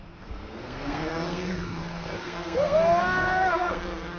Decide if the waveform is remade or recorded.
remade